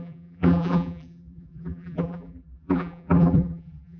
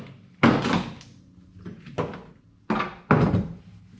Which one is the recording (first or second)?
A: second